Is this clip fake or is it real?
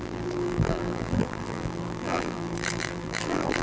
fake